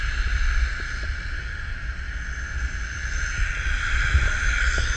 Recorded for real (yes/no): yes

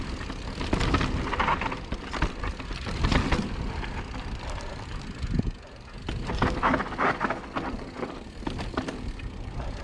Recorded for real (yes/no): yes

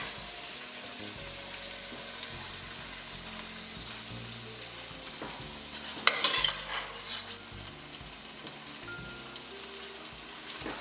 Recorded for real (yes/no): yes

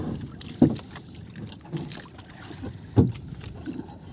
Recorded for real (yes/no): yes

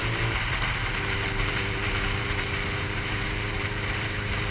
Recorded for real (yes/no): no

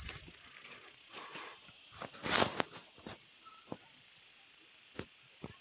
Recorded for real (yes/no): yes